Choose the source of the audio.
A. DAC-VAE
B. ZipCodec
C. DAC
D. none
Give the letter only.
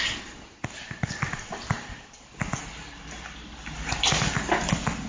D